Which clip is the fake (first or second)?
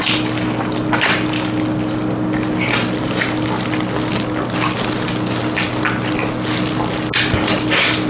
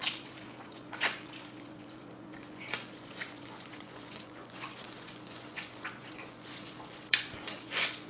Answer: second